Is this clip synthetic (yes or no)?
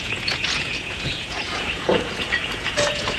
yes